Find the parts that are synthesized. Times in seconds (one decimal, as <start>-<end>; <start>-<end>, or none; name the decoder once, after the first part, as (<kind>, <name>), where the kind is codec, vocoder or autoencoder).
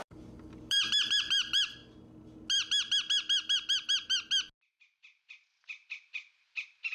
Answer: 0.0-1.8 (vocoder, BigVGAN v2); 4.8-6.9